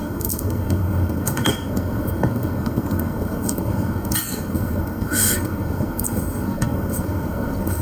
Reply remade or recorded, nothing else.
remade